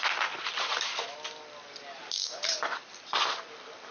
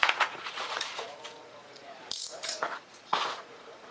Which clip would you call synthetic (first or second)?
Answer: second